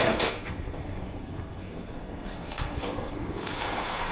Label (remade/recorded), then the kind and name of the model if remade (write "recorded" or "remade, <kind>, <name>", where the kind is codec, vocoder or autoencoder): remade, codec, SNAC